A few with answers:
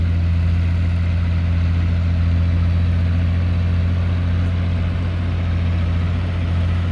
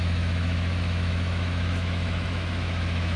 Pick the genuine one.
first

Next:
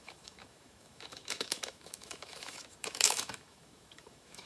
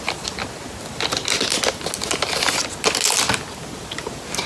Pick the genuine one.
second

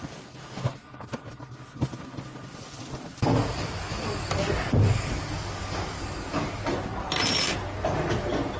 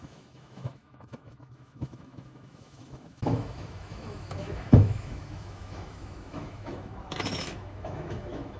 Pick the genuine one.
first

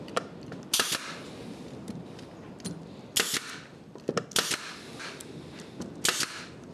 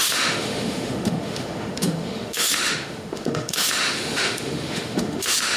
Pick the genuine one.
first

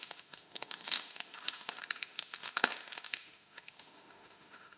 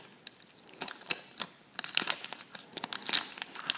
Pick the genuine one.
second